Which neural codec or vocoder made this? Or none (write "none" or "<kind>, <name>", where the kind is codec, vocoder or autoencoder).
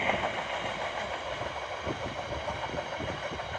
none